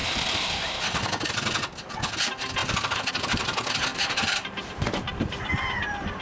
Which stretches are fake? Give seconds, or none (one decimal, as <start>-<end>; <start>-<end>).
2.6-3.1; 3.9-6.2